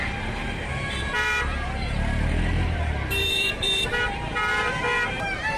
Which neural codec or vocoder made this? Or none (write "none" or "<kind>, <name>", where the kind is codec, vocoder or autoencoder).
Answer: vocoder, BigVGAN v2